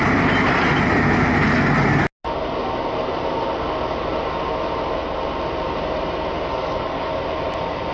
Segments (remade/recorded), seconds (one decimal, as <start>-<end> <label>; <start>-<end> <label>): 0.0-6.5 recorded; 6.5-7.1 remade; 7.1-7.9 recorded